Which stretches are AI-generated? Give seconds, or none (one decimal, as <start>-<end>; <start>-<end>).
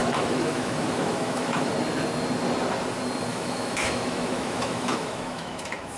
0.0-1.7; 3.3-6.0